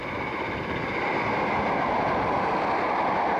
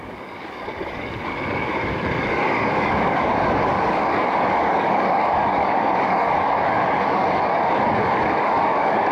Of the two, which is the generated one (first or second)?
second